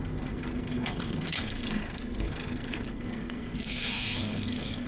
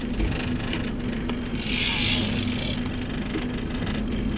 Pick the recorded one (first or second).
second